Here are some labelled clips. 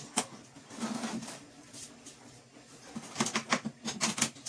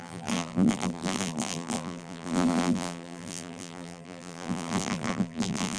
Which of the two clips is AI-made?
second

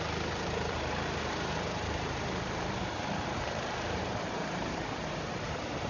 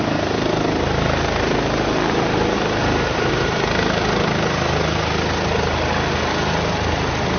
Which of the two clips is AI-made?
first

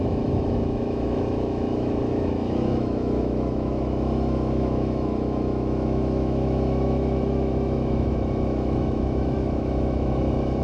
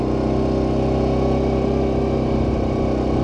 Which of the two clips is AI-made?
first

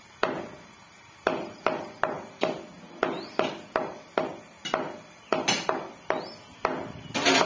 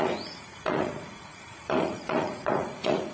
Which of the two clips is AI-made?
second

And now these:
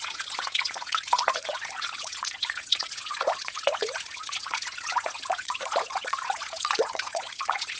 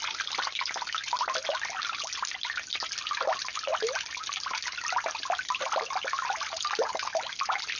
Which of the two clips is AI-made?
first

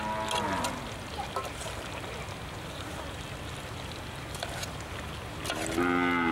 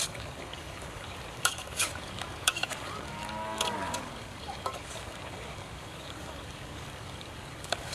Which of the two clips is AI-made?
second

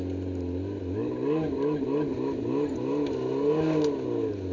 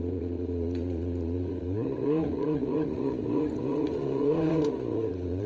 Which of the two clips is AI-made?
second